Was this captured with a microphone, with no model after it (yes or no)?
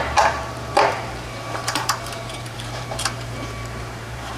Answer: no